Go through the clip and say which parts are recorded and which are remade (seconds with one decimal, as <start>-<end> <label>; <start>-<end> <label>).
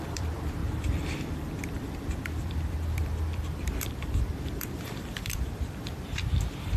0.0-6.8 remade